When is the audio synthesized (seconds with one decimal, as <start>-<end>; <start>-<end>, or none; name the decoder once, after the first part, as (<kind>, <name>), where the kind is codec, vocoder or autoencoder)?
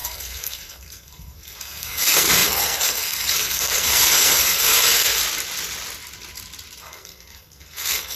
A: 0.0-5.2 (codec, SNAC); 6.8-8.2